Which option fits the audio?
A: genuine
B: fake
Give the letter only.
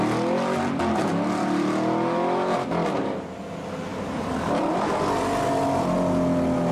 A